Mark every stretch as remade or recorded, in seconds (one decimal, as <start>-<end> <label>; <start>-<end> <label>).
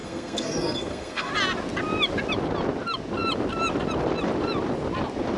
0.0-1.3 remade; 1.3-5.4 recorded